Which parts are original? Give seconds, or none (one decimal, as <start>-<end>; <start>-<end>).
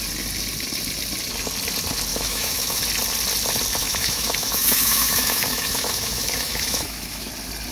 0.0-2.1; 2.8-3.8; 7.3-7.7